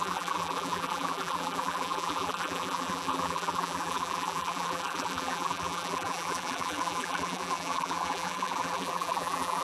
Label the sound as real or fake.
fake